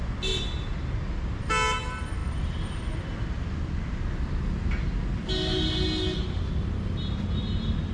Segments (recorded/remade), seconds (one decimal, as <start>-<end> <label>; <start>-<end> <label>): 0.0-7.9 recorded